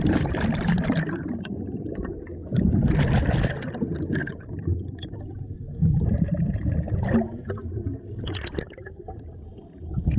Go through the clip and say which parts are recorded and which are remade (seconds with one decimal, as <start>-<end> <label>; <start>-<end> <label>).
0.0-2.3 remade; 2.3-4.3 recorded; 4.3-4.7 remade; 4.7-7.0 recorded; 7.0-10.2 remade